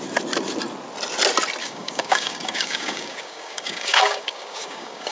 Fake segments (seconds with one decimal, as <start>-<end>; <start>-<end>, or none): 1.6-5.1